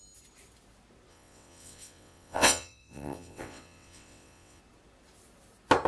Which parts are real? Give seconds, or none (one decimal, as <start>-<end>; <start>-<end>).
0.0-1.1; 4.6-5.9